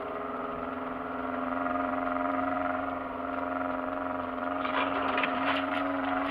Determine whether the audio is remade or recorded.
remade